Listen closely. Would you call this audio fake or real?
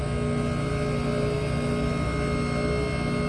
real